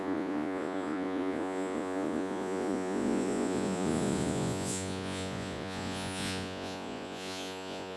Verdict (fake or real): fake